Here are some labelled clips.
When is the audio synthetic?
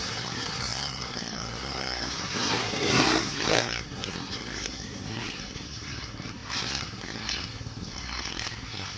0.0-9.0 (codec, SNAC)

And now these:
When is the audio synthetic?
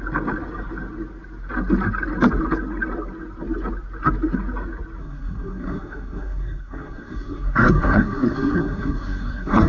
5.0-9.7 (codec, SNAC)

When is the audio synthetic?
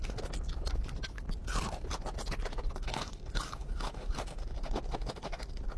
none